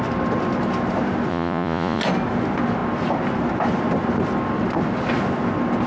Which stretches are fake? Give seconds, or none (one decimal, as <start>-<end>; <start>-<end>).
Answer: 1.3-2.0